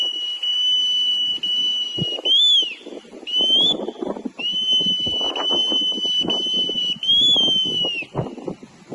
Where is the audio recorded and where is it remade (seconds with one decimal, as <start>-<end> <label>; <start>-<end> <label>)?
0.0-8.9 recorded